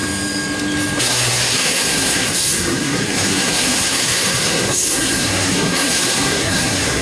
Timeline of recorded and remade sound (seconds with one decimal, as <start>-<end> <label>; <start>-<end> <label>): 0.0-1.0 recorded; 1.0-7.0 remade